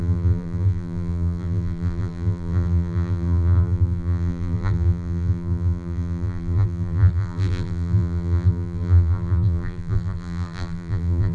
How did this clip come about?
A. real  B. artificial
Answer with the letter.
B